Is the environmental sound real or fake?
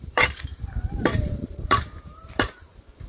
fake